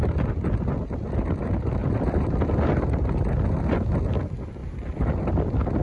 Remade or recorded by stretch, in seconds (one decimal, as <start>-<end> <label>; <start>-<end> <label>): 0.0-1.8 recorded; 1.8-3.1 remade; 3.1-4.6 recorded; 4.6-5.1 remade; 5.1-5.8 recorded